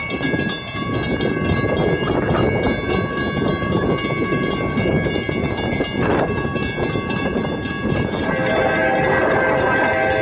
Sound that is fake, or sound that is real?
real